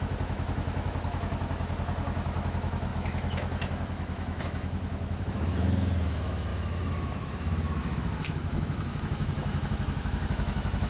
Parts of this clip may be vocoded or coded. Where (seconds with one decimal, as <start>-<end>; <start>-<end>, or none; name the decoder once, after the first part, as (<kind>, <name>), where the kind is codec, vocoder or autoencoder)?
0.0-10.9 (autoencoder, DAC-VAE)